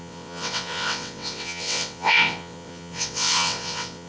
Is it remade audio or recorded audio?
remade